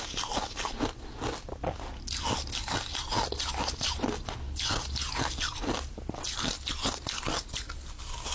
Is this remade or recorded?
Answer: recorded